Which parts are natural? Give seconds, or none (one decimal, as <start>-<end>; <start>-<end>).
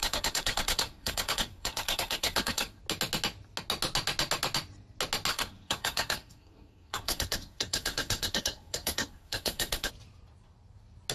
2.8-5.3; 9.9-11.1